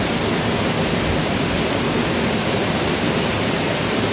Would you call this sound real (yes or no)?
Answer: yes